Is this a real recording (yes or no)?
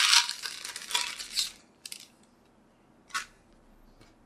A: yes